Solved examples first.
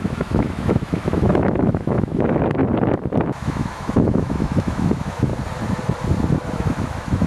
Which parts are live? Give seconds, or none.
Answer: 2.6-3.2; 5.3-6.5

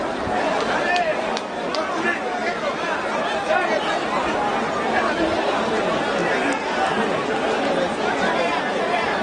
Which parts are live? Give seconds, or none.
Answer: 0.0-9.2

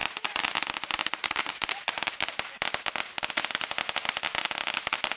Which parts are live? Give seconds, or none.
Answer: 0.0-5.2

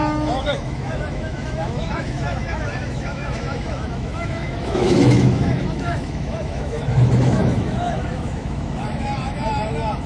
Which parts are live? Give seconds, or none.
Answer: none